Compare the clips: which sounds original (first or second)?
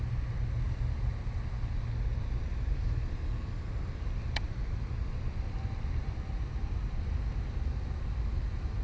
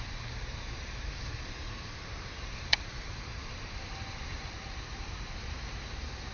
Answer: first